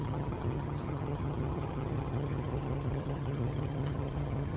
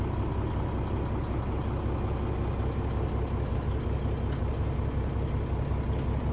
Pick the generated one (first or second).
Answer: first